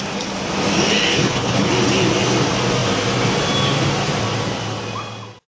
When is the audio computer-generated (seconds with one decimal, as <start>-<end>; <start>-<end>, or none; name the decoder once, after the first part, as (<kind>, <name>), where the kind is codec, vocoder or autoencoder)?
1.1-1.7 (codec, HILCodec)